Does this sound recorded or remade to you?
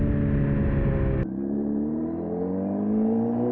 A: recorded